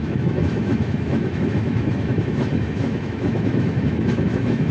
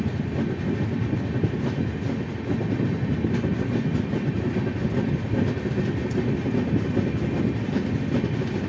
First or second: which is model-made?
first